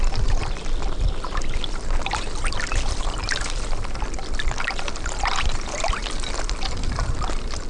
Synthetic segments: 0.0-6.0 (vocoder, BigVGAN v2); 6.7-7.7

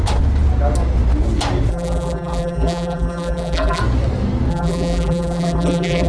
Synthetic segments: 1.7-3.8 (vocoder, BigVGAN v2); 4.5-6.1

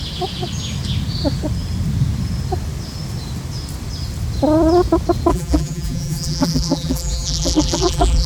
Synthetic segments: 5.3-8.3 (vocoder, BigVGAN v2)

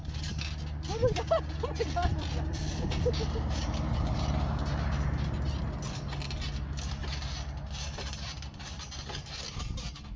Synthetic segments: 2.1-3.1 (vocoder, BigVGAN v2); 7.0-9.6

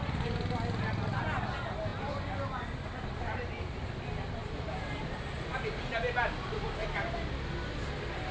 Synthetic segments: 4.4-5.0 (vocoder, BigVGAN v2)

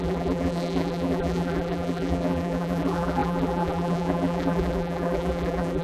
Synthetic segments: 0.0-5.8 (vocoder, BigVGAN v2)